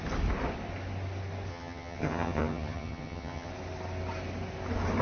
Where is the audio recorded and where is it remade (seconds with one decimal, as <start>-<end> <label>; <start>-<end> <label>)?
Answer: 0.0-1.5 recorded; 1.5-3.5 remade; 3.5-5.0 recorded